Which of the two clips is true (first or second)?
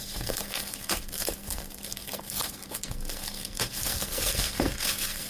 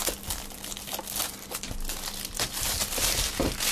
second